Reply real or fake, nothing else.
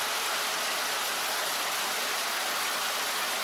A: real